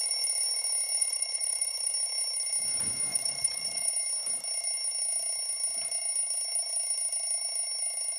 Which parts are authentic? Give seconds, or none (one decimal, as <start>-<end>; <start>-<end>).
0.0-1.0; 1.9-3.1; 3.9-8.2